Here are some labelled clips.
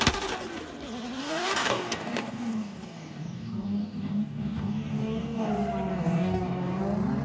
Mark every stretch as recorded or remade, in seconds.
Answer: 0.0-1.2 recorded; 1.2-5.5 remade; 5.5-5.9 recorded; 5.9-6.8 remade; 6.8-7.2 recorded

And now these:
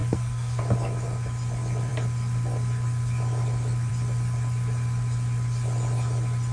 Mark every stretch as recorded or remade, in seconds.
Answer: 0.0-0.6 remade; 0.6-6.5 recorded

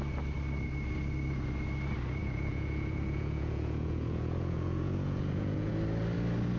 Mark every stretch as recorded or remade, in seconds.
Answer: 0.0-2.2 recorded; 2.2-5.7 remade; 5.7-6.6 recorded

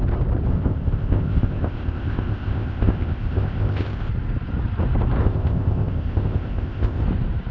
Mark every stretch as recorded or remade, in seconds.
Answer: 0.0-0.5 recorded; 0.5-4.1 remade; 4.1-5.2 recorded; 5.2-7.0 remade; 7.0-7.5 recorded

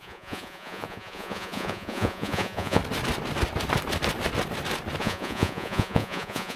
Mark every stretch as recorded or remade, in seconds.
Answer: 0.0-2.8 remade; 2.8-5.0 recorded; 5.0-6.6 remade

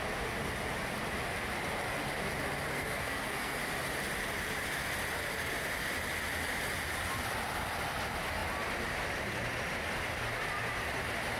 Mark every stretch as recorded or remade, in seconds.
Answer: 0.0-2.7 recorded; 2.7-3.6 remade; 3.6-11.4 recorded

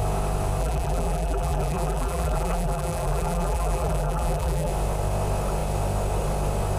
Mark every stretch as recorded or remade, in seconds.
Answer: 0.0-0.6 recorded; 0.6-4.7 remade; 4.7-6.8 recorded

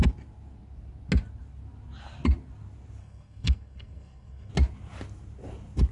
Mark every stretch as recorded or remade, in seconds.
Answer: 0.0-3.0 recorded; 3.0-4.5 remade; 4.5-5.9 recorded